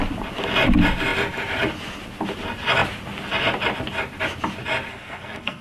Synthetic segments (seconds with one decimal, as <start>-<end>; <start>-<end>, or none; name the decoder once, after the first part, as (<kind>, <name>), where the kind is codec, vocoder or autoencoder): 4.9-5.6 (codec, SNAC)